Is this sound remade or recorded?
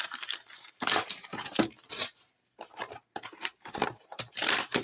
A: remade